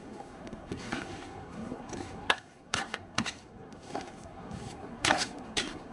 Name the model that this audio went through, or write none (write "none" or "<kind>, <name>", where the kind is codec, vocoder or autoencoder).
codec, SNAC